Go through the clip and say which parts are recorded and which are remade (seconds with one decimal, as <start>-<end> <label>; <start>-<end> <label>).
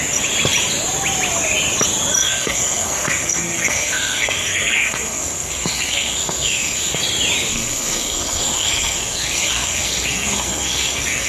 0.0-2.2 recorded; 2.2-7.0 remade; 7.0-7.5 recorded; 7.5-11.3 remade